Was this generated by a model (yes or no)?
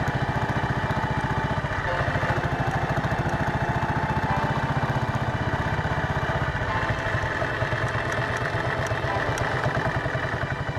no